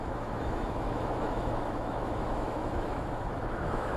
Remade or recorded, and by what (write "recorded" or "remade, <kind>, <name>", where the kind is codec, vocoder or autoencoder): remade, autoencoder, DAC-VAE